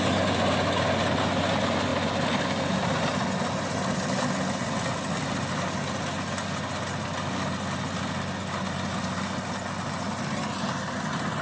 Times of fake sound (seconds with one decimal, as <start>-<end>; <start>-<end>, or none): none